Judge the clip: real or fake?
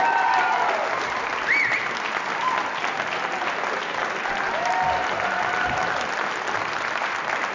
real